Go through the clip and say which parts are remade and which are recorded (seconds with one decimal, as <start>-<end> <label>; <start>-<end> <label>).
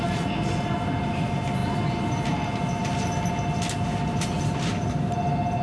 0.0-5.6 recorded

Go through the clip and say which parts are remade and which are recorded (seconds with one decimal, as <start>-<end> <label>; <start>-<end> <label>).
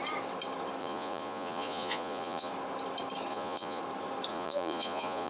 0.0-0.8 recorded; 0.8-2.5 remade; 2.5-3.3 recorded; 3.3-3.8 remade; 3.8-4.3 recorded; 4.3-5.3 remade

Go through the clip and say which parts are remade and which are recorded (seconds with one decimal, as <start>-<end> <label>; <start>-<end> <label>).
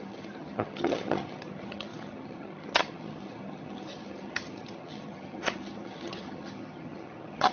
0.0-7.5 remade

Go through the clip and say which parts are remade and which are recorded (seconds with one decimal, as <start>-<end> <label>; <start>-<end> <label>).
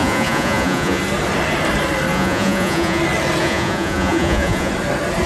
0.0-1.0 remade; 1.0-2.1 recorded; 2.1-3.0 remade; 3.0-3.4 recorded; 3.4-4.7 remade; 4.7-5.3 recorded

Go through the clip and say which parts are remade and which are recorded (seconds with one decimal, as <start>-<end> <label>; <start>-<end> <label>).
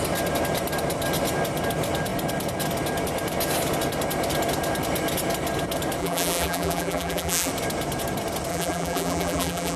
0.0-6.0 recorded; 6.0-7.5 remade; 7.5-8.5 recorded; 8.5-9.8 remade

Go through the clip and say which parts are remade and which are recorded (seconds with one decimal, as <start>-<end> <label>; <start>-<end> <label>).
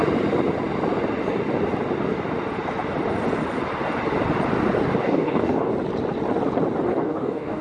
0.0-5.0 recorded; 5.0-5.7 remade; 5.7-6.9 recorded; 6.9-7.6 remade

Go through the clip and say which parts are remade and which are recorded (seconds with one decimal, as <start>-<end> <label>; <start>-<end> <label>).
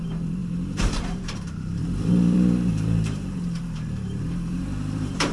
0.0-5.3 remade